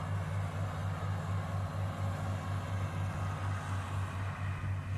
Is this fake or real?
real